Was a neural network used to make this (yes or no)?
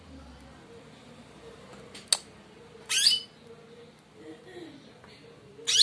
no